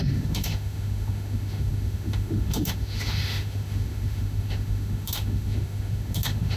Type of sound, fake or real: fake